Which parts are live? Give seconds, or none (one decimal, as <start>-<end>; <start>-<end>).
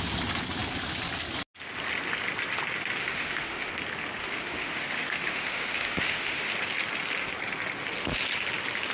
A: 0.0-3.0; 3.7-4.2; 6.5-8.9